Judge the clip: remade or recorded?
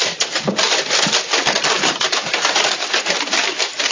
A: remade